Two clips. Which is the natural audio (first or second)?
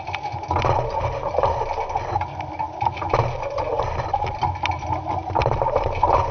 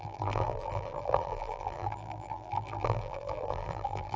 first